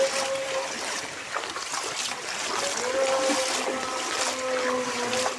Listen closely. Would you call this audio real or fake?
real